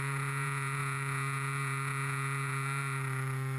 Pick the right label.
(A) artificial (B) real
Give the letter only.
A